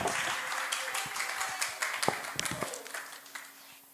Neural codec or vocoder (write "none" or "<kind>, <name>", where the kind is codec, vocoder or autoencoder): none